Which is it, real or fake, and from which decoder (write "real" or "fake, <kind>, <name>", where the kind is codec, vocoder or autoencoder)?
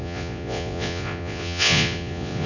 fake, vocoder, Vocos